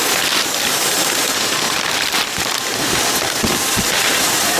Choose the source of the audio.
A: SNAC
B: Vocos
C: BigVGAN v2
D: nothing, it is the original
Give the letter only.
C